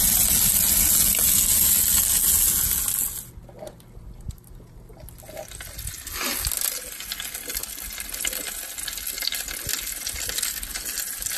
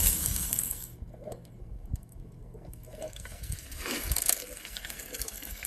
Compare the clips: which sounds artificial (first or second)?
second